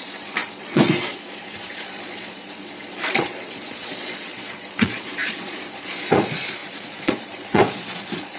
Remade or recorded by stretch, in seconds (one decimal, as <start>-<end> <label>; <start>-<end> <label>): 0.0-8.4 remade